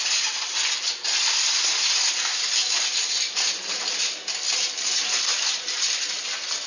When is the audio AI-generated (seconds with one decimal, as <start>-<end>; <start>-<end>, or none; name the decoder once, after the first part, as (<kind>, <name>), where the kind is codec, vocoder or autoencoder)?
none